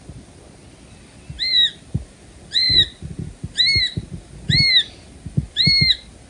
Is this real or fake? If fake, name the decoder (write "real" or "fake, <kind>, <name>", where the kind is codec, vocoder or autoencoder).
real